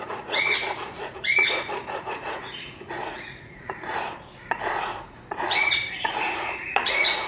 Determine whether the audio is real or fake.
fake